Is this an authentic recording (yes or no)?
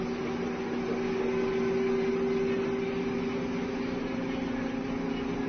yes